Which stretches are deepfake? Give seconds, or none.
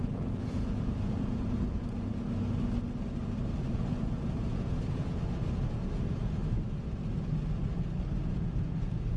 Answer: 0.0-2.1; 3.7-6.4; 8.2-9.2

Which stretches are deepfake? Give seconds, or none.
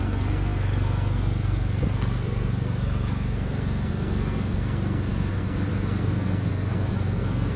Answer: 0.0-7.6